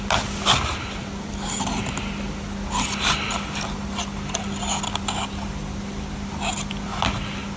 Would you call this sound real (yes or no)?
yes